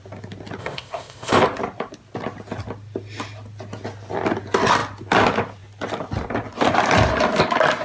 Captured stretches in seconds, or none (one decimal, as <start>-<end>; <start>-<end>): 0.0-0.6; 1.4-7.8